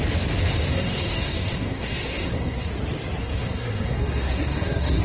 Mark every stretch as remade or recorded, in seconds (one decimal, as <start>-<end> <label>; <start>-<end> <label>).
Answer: 0.0-0.7 recorded; 0.7-2.7 remade; 2.7-3.2 recorded; 3.2-5.0 remade